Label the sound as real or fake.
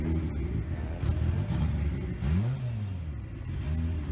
real